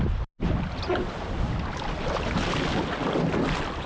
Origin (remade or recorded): recorded